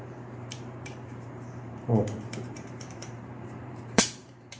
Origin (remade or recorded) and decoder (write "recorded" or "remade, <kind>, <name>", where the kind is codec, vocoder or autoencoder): remade, vocoder, BigVGAN v2